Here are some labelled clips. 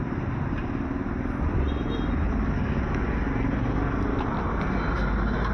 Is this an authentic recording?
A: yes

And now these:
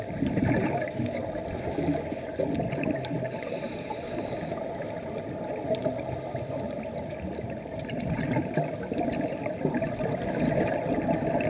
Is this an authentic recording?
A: yes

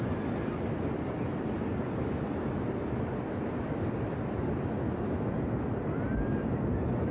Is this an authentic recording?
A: yes